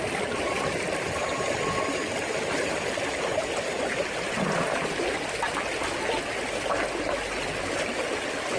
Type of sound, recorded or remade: recorded